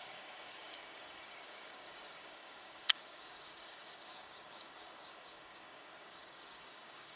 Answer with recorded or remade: remade